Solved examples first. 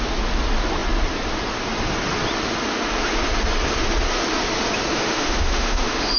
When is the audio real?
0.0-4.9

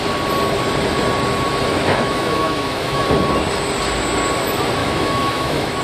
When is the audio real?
0.0-1.7; 3.0-4.8

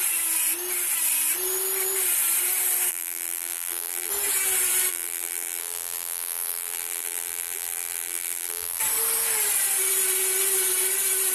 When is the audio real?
0.0-2.9; 4.1-4.9; 8.8-11.3

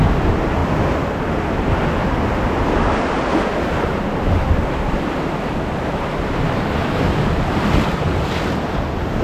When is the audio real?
0.0-9.2

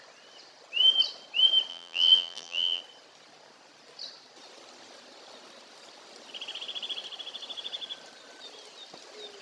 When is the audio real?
0.0-1.7; 2.8-9.4

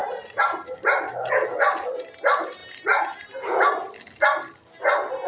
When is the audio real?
1.1-2.6; 3.6-5.3